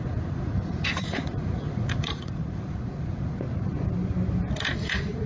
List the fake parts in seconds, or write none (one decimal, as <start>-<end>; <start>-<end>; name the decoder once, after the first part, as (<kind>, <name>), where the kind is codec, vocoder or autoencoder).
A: 0.0-3.7 (vocoder, Vocos); 4.7-5.3